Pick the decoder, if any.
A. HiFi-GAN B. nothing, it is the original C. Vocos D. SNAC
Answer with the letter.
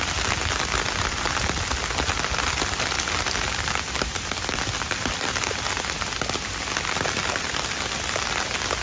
B